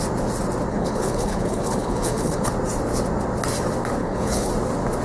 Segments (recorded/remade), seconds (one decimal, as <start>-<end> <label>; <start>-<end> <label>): 0.0-0.7 recorded; 0.7-2.5 remade; 2.5-4.0 recorded; 4.0-4.5 remade; 4.5-5.0 recorded